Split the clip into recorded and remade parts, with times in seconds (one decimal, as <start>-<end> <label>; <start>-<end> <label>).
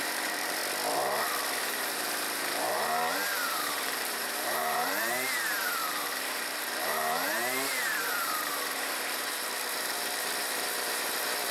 0.0-0.6 remade; 0.6-1.6 recorded; 1.6-11.5 remade